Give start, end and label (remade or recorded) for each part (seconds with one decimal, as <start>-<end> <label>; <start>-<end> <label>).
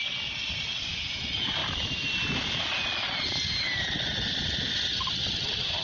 0.0-1.6 remade; 1.6-4.9 recorded; 4.9-5.8 remade